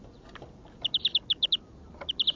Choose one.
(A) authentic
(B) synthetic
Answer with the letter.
B